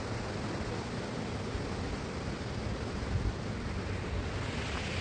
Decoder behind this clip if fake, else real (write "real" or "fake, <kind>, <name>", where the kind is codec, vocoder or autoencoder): real